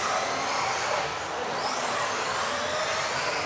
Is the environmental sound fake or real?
real